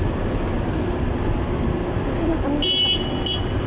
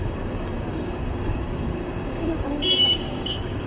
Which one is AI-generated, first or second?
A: second